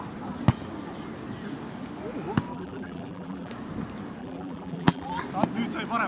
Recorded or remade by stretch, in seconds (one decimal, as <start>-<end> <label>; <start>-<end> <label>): 0.0-2.5 recorded; 2.5-3.5 remade; 3.5-4.2 recorded; 4.2-5.2 remade; 5.2-6.1 recorded